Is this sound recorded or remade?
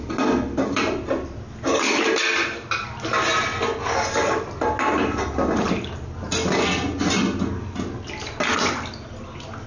recorded